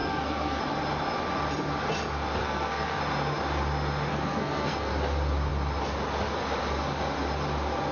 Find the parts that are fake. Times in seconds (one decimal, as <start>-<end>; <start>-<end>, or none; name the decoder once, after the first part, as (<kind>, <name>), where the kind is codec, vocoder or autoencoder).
0.0-0.6 (codec, SNAC); 2.4-3.0; 4.1-4.9